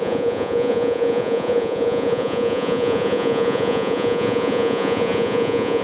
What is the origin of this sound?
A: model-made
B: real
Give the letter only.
A